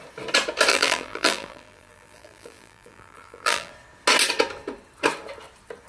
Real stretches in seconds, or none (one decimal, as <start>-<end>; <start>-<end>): 0.0-0.7; 3.7-5.9